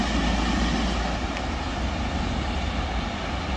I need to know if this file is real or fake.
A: real